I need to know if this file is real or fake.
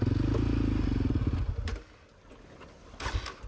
real